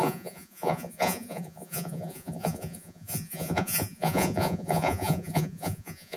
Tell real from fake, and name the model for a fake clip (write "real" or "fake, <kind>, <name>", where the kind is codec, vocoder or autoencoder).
fake, vocoder, Vocos